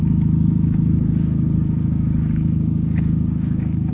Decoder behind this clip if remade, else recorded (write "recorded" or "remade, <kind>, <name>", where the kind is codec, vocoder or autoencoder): remade, codec, DAC